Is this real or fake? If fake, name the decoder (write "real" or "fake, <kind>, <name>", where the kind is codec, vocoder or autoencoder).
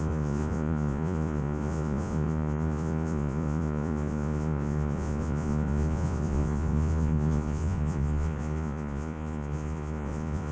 fake, vocoder, Vocos